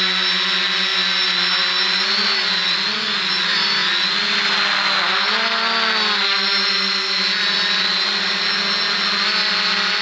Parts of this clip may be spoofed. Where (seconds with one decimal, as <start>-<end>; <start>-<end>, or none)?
none